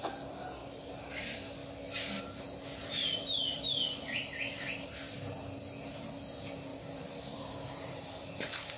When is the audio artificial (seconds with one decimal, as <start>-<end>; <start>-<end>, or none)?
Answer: 0.6-1.2; 2.8-4.2; 6.7-8.3